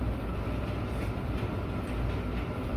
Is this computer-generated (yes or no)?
yes